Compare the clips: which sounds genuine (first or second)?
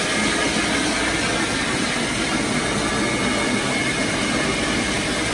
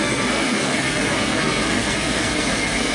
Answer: first